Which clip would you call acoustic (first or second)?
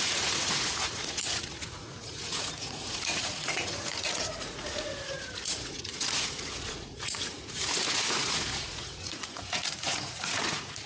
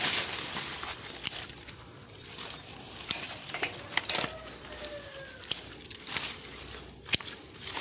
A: second